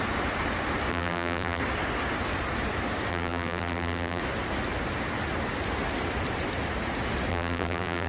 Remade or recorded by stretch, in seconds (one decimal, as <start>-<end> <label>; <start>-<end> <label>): 0.0-0.9 recorded; 0.9-1.6 remade; 1.6-3.1 recorded; 3.1-4.2 remade; 4.2-7.3 recorded; 7.3-8.1 remade